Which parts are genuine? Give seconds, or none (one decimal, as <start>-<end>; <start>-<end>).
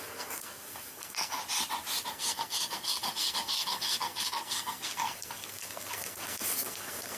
1.4-2.1